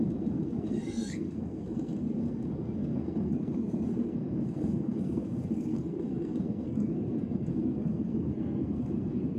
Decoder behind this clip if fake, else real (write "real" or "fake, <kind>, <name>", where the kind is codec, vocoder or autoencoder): fake, codec, SNAC